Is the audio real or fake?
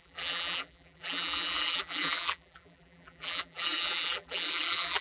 fake